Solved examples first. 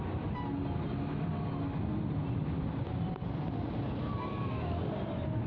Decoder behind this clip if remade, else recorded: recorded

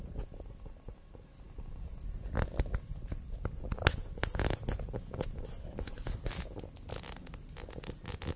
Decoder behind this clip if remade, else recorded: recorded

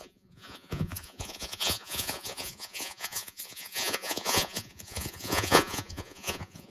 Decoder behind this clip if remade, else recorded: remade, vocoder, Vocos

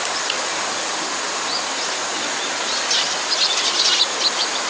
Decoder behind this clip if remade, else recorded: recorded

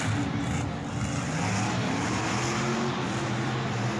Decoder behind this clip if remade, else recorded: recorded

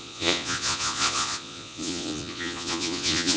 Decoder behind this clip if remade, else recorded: remade, vocoder, Vocos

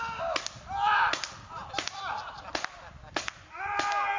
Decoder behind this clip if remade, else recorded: recorded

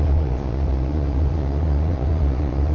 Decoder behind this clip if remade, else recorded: remade, vocoder, Vocos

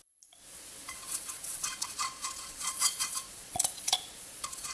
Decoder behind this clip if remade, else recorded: remade, vocoder, Vocos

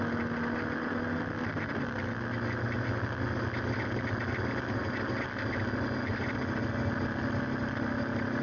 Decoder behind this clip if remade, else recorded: recorded